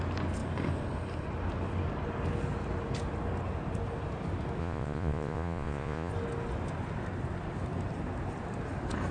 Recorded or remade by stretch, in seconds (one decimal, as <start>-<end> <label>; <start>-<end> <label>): 0.0-4.6 recorded; 4.6-6.1 remade; 6.1-9.1 recorded